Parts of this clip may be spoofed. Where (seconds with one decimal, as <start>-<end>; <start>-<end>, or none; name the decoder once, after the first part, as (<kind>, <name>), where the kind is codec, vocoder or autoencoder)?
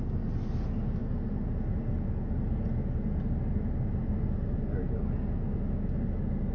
none